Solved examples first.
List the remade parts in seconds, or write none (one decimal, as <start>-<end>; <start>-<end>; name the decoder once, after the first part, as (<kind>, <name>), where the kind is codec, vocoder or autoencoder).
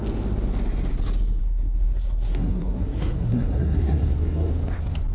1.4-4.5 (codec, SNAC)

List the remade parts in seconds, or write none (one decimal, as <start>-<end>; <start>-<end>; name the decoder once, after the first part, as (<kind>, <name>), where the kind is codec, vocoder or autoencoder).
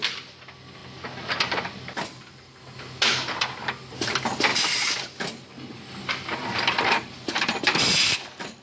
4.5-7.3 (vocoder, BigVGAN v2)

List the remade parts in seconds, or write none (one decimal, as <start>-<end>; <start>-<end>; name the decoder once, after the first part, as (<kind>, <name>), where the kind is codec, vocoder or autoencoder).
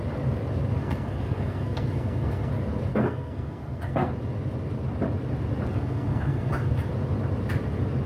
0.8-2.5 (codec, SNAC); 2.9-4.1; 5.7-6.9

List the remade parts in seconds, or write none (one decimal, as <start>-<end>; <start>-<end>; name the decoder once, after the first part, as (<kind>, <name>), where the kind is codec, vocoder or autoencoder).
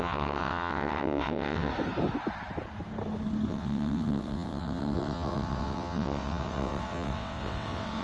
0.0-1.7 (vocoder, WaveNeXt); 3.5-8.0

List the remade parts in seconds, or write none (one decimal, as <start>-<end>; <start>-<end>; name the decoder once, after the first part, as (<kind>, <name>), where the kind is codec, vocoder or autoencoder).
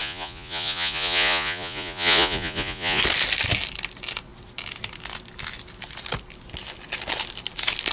0.0-3.0 (vocoder, Vocos)